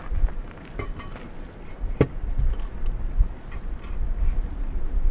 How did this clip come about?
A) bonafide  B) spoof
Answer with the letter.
A